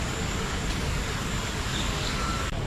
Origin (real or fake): fake